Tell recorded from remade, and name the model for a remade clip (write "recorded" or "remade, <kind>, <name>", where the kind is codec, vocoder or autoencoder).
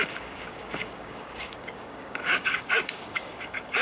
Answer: remade, codec, DAC